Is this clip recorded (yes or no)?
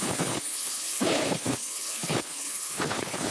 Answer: no